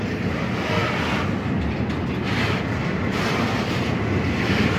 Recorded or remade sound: recorded